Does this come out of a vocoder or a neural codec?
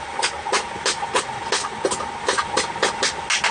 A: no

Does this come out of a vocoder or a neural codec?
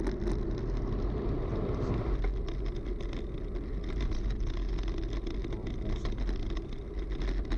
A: no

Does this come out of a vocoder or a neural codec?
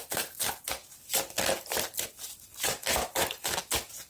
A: no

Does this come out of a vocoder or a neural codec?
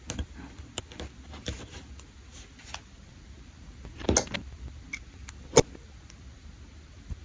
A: no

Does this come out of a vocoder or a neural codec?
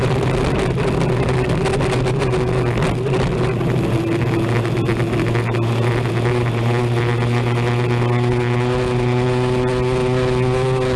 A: no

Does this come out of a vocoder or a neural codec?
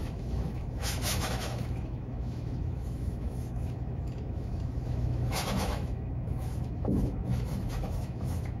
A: yes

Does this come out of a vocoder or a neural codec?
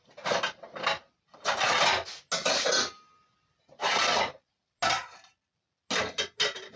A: no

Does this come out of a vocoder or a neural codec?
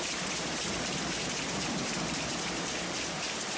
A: yes